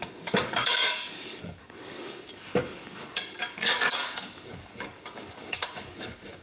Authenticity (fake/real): fake